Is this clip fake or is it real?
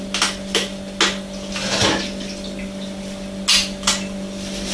real